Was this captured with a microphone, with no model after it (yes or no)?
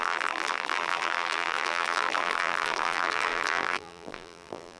no